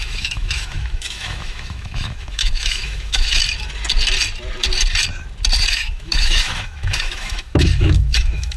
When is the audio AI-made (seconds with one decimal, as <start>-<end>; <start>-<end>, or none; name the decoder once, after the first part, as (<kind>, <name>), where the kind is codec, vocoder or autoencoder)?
0.0-3.4 (autoencoder, DAC-VAE); 5.7-8.6